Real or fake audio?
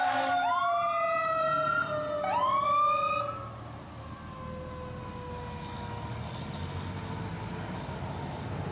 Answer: real